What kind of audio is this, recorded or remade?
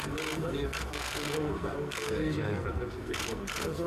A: remade